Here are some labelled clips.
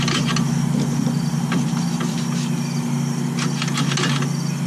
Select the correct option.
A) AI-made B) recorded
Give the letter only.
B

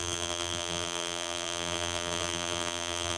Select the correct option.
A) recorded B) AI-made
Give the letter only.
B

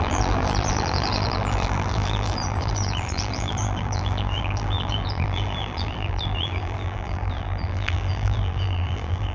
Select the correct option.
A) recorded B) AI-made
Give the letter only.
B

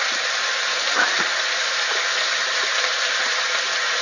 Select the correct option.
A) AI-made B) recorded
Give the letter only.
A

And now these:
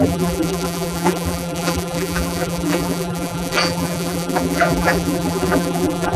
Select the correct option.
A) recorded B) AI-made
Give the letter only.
B